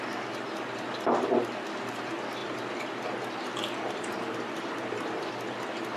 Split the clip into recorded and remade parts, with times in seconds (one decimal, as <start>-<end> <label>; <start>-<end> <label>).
0.0-2.4 recorded; 2.4-5.3 remade; 5.3-6.0 recorded